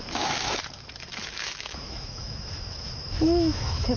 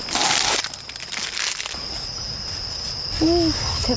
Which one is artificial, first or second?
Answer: first